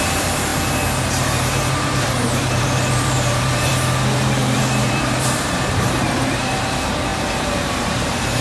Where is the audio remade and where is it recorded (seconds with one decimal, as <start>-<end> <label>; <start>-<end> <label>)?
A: 0.0-0.5 remade; 0.5-1.2 recorded; 1.2-3.7 remade; 3.7-4.4 recorded; 4.4-8.4 remade

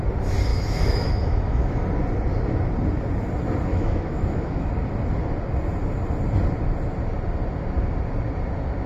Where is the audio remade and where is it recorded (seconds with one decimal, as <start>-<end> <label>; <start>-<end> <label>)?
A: 0.0-0.5 recorded; 0.5-1.8 remade; 1.8-3.7 recorded; 3.7-4.7 remade; 4.7-8.9 recorded

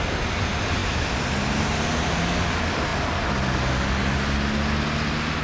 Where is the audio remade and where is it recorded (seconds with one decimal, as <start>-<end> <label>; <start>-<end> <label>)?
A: 0.0-5.4 recorded

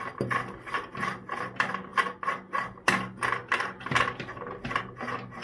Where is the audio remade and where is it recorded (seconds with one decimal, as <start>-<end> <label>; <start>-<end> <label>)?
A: 0.0-5.4 recorded

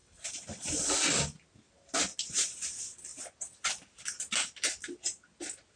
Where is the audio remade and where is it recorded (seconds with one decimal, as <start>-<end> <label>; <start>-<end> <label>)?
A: 0.0-5.8 recorded